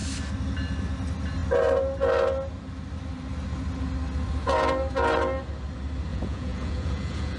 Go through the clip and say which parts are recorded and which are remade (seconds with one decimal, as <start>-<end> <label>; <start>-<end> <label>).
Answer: 0.0-6.1 recorded; 6.1-7.4 remade